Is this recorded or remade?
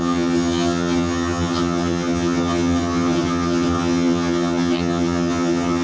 remade